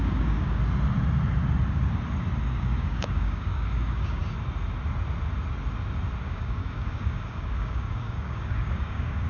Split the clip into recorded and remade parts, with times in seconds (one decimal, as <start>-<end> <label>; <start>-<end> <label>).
0.0-0.6 remade; 0.6-2.4 recorded; 2.4-4.2 remade; 4.2-6.2 recorded; 6.2-9.3 remade